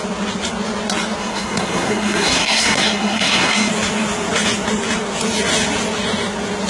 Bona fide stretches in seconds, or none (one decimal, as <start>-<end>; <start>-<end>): 0.0-1.2; 3.7-6.7